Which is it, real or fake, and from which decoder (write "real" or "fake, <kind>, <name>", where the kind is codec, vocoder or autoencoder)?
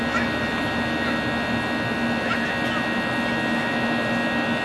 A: real